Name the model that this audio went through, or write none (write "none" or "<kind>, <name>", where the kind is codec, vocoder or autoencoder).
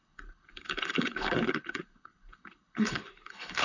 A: codec, HILCodec